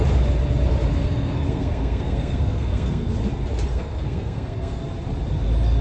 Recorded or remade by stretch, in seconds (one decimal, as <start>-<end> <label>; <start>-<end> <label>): 0.0-0.9 recorded; 0.9-3.1 remade; 3.1-3.7 recorded; 3.7-4.8 remade; 4.8-5.8 recorded